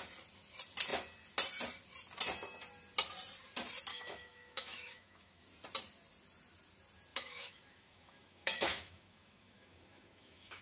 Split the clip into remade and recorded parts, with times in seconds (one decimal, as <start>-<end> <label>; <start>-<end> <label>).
0.0-3.9 recorded; 3.9-5.4 remade; 5.4-7.1 recorded; 7.1-10.6 remade